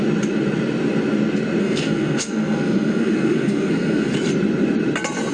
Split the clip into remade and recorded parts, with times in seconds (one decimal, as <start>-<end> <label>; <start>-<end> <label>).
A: 0.0-1.6 recorded; 1.6-4.1 remade; 4.1-5.3 recorded